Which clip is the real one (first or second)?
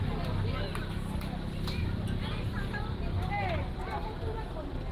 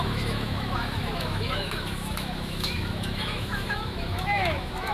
first